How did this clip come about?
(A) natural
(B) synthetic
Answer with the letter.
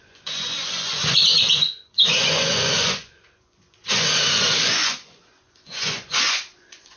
B